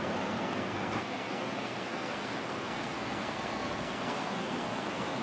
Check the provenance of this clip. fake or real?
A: fake